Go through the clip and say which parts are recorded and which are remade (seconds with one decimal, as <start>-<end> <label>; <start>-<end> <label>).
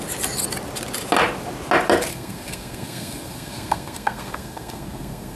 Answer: 0.0-2.1 recorded; 2.1-5.4 remade